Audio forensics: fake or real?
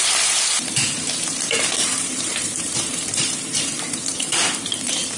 fake